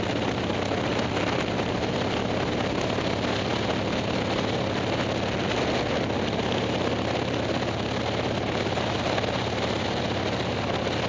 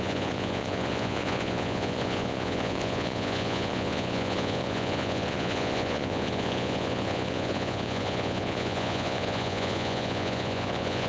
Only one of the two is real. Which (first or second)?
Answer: first